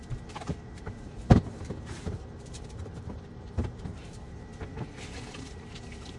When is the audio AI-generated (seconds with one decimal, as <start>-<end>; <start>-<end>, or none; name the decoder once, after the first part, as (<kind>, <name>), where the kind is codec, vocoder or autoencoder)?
0.0-4.5 (vocoder, BigVGAN v2); 5.0-6.2